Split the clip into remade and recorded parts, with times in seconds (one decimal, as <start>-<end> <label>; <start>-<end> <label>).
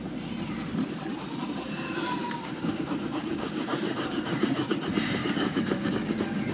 0.0-2.2 recorded; 2.2-4.7 remade; 4.7-5.2 recorded; 5.2-5.9 remade; 5.9-6.5 recorded